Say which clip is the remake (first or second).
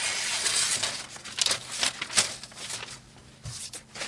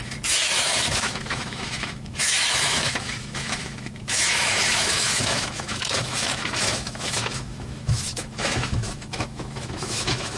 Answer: second